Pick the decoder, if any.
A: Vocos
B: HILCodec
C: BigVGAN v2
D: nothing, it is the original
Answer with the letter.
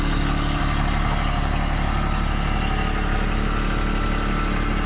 D